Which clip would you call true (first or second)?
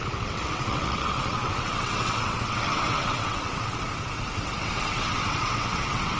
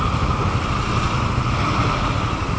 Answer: second